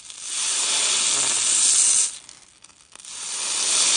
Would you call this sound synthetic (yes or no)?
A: no